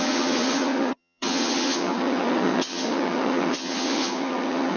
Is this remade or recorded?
remade